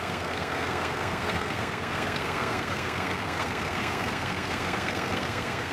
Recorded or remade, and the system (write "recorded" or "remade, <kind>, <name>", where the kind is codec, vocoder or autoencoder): remade, codec, SNAC